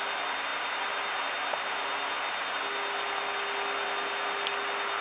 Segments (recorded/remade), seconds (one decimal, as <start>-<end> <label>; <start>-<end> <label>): 0.0-5.0 recorded